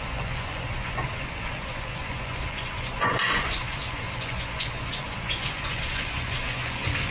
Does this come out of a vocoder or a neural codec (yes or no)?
yes